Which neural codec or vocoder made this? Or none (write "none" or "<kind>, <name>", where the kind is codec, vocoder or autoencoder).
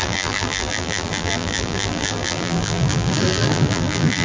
vocoder, BigVGAN v2